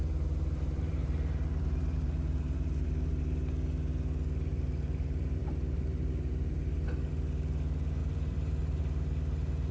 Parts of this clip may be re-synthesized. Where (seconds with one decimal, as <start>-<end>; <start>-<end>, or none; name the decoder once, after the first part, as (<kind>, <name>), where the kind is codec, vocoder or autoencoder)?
0.0-3.2 (vocoder, BigVGAN v2); 4.5-7.1; 8.0-8.8